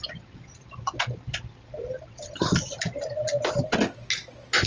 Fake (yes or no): no